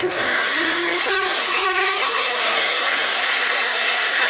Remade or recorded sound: remade